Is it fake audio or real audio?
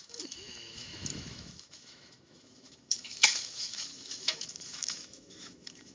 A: fake